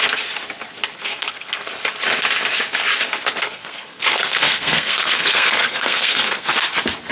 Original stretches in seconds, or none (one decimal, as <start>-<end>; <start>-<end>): 0.0-1.0; 1.7-3.4; 6.5-7.1